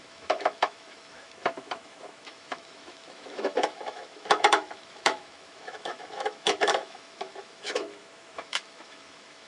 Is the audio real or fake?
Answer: fake